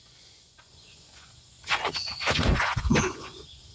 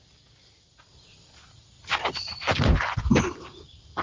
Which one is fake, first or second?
first